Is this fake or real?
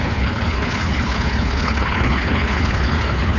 fake